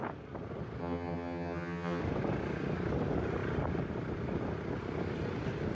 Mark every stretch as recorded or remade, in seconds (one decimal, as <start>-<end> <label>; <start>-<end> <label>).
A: 0.0-0.8 recorded; 0.8-2.0 remade; 2.0-5.7 recorded